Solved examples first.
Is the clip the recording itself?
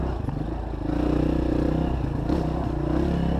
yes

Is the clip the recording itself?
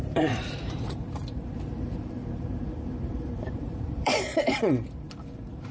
no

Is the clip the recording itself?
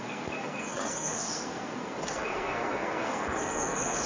no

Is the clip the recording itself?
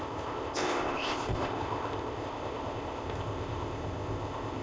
no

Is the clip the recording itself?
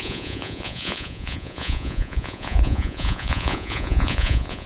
no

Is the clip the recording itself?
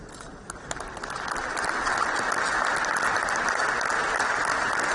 yes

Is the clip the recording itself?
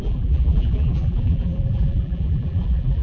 no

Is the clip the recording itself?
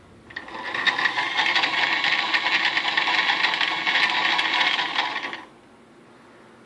yes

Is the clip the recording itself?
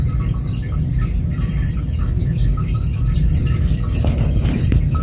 no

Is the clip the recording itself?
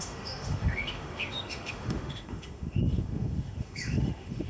no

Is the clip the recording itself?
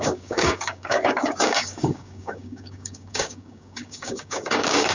no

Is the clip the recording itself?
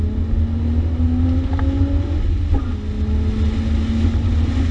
yes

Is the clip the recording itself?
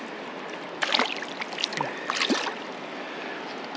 yes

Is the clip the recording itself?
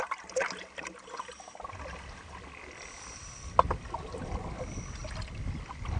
yes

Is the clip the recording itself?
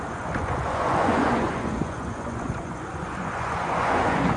no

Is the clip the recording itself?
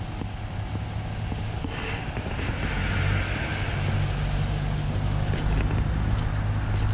yes